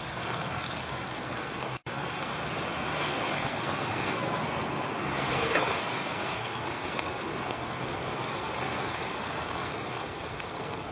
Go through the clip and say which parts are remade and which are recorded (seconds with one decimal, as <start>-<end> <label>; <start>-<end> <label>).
0.0-2.3 remade; 2.3-3.0 recorded; 3.0-10.9 remade